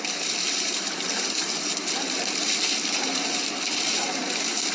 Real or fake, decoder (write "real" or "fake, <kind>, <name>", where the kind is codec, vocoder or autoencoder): fake, vocoder, BigVGAN v2